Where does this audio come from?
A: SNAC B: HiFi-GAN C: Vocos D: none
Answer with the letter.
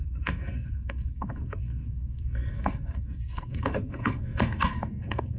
A